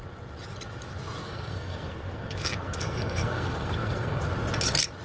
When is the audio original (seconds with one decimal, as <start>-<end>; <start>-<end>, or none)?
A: 0.0-1.2; 4.2-5.0